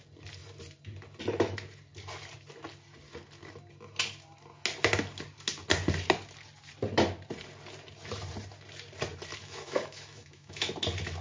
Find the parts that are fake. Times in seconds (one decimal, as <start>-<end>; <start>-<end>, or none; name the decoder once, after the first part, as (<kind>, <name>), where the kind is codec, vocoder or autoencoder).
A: 9.4-10.7 (autoencoder, DAC-VAE)